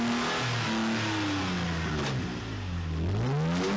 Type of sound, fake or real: real